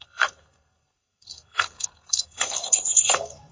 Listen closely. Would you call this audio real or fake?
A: fake